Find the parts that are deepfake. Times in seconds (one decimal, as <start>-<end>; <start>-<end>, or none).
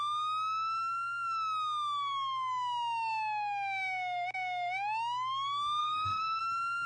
5.8-6.4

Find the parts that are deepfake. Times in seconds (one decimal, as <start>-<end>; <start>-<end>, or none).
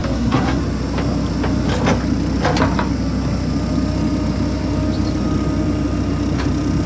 0.0-0.6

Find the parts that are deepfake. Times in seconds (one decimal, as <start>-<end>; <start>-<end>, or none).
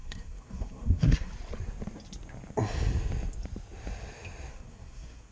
0.0-1.3; 4.5-5.3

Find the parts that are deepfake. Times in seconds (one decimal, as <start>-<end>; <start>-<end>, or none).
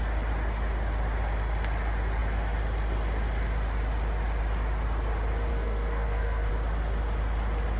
5.5-6.5